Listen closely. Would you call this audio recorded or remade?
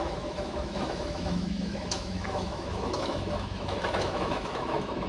remade